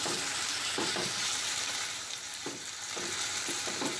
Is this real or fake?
fake